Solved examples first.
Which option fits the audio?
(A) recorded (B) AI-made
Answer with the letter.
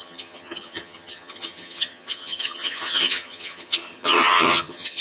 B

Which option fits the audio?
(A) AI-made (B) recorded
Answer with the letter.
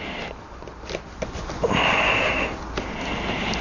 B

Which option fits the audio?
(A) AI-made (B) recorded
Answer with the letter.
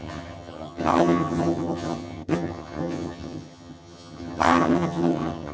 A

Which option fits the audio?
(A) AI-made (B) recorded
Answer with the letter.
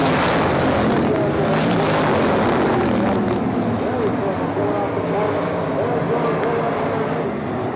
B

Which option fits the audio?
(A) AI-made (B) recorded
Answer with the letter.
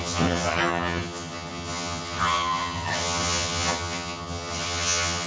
A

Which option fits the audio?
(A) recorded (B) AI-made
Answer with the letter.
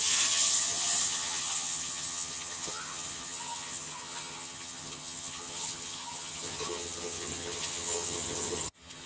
B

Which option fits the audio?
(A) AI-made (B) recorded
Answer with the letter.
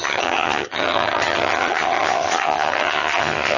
A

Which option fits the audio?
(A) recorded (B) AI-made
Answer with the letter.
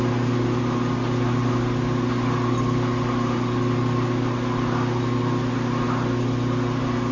A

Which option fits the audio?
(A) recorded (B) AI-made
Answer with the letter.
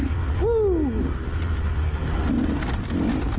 A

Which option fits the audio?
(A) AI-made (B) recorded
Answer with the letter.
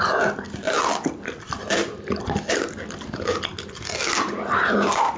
B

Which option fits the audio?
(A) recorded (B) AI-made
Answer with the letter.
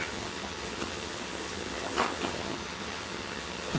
B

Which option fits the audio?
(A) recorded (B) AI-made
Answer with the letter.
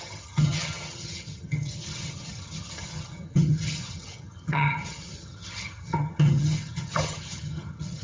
B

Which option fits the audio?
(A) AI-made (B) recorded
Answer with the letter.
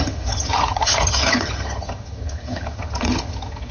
A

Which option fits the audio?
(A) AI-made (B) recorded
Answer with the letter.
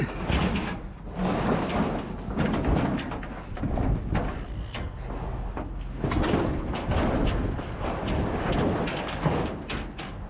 B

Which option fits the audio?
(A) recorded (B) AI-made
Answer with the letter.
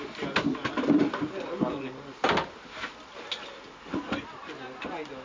A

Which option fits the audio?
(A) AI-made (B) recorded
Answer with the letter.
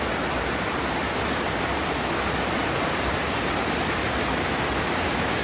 B